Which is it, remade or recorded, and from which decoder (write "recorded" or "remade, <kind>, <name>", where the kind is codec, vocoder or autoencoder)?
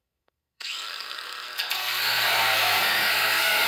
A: remade, codec, SNAC